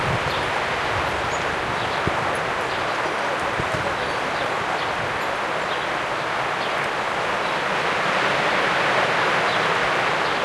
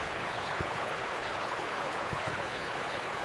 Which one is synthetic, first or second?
second